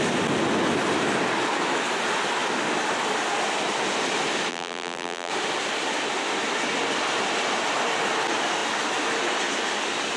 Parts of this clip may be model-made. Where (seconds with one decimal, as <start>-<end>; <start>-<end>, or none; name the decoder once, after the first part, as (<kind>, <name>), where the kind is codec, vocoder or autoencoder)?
4.5-5.3 (vocoder, BigVGAN v2)